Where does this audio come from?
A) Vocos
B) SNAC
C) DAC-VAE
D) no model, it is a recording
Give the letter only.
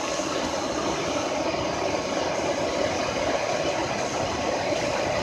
D